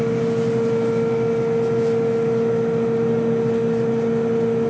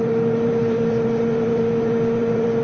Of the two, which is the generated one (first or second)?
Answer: second